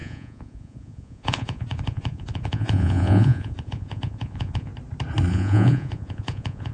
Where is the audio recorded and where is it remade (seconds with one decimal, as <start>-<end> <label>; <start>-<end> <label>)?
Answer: 0.0-4.7 remade; 4.7-5.3 recorded; 5.3-6.7 remade